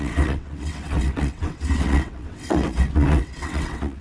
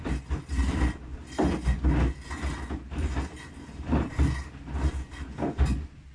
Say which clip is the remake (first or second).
first